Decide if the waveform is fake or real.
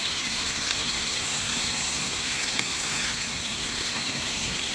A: fake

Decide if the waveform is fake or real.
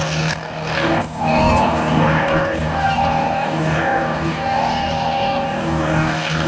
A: fake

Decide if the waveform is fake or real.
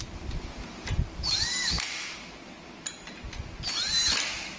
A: real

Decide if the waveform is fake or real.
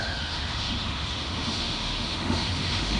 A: fake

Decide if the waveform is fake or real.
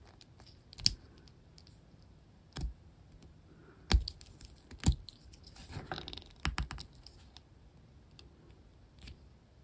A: real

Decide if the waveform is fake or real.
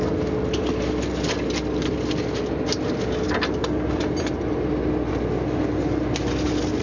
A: real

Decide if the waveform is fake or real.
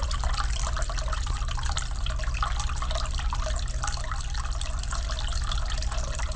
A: real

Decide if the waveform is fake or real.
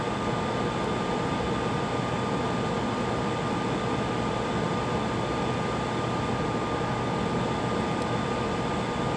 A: real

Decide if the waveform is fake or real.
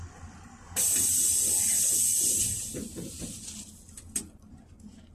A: real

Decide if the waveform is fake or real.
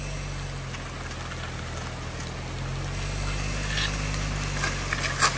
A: real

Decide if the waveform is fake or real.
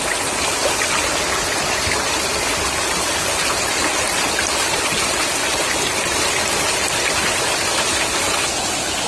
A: real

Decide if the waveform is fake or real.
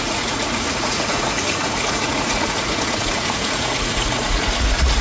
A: fake